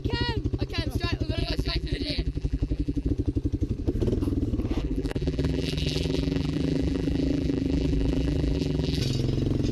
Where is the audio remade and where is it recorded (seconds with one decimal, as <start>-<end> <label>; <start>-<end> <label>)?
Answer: 0.0-1.4 recorded; 1.4-3.1 remade; 3.1-4.8 recorded; 4.8-9.0 remade; 9.0-9.7 recorded